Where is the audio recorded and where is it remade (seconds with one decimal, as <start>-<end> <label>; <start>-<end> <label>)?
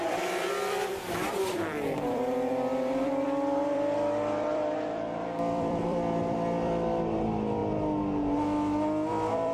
0.0-7.6 remade; 7.6-9.1 recorded; 9.1-9.5 remade